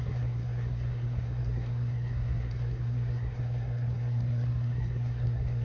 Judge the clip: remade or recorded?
remade